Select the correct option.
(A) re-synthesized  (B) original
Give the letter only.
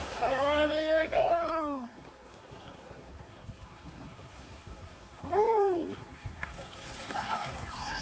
A